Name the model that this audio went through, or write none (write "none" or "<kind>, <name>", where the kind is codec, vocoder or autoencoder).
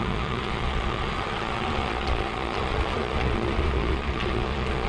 vocoder, Vocos